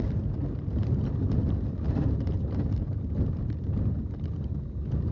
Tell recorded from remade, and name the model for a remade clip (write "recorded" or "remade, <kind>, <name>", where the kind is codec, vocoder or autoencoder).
recorded